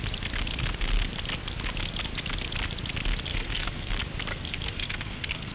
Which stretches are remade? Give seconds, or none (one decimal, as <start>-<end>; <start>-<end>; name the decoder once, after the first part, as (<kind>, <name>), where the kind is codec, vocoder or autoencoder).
3.3-3.9 (codec, SNAC); 4.3-5.5